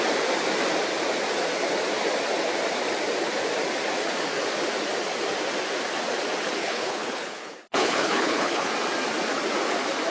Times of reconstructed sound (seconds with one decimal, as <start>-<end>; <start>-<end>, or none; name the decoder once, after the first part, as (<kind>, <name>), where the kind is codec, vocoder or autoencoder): 6.6-8.7 (codec, HILCodec)